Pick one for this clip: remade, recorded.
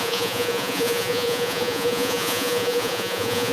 remade